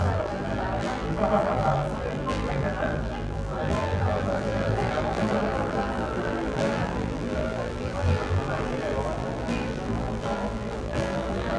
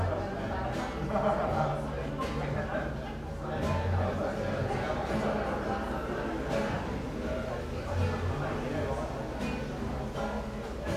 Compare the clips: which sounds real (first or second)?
second